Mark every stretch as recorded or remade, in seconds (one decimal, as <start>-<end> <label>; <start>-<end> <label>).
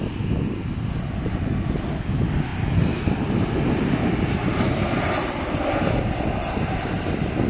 0.0-7.5 recorded